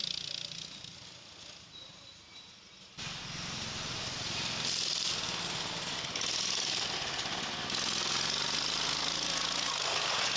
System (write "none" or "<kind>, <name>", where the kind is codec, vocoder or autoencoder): none